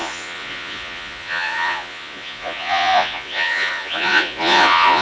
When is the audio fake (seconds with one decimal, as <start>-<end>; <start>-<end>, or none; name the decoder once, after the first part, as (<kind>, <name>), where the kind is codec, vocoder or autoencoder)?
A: 0.0-5.0 (vocoder, Vocos)